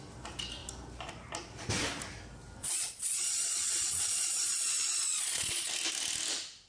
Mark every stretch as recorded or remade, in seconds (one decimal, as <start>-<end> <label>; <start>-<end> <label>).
0.0-2.6 recorded; 2.6-5.7 remade; 5.7-6.7 recorded